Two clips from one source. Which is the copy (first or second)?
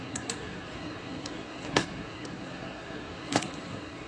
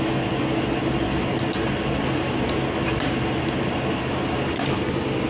first